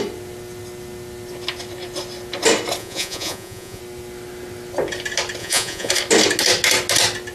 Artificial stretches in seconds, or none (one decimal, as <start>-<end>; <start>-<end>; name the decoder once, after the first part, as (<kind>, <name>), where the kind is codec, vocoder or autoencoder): 2.8-3.8 (vocoder, Vocos); 5.4-5.9